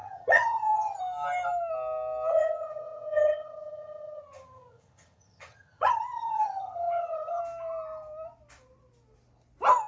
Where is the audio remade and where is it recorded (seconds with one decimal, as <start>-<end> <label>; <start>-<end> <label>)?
0.0-1.0 remade; 1.0-2.3 recorded; 2.3-7.4 remade; 7.4-9.9 recorded